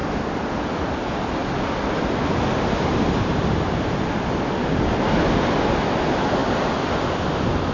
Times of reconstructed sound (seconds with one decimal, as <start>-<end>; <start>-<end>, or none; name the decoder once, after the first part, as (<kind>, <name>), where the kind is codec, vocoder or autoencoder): none